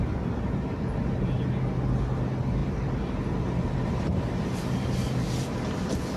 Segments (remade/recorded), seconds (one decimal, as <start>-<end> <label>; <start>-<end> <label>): 0.0-6.2 recorded